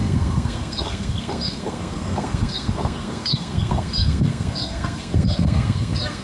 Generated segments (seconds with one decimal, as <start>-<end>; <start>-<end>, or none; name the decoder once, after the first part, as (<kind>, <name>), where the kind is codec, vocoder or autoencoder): 0.0-6.2 (codec, SNAC)